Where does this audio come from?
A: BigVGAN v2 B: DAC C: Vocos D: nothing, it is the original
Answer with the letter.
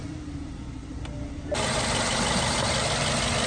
D